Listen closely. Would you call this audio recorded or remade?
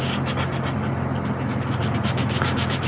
recorded